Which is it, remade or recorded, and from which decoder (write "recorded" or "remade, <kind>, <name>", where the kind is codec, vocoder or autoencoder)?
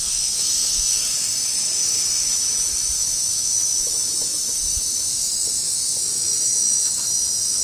remade, autoencoder, DAC-VAE